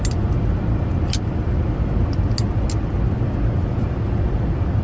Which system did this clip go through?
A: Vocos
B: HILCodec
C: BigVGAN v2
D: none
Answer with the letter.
D